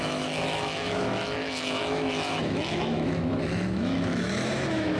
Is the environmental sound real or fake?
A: fake